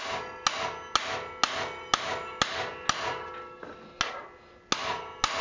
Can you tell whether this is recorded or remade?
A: recorded